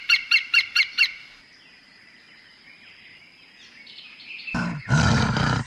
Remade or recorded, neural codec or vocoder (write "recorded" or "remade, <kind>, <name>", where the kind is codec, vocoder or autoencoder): remade, vocoder, BigVGAN v2